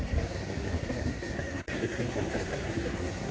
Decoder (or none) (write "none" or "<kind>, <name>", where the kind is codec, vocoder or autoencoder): codec, SNAC